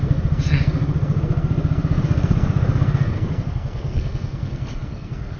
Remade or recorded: remade